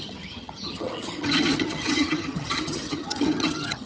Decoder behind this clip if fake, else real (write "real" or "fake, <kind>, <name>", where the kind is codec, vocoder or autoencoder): fake, vocoder, HiFi-GAN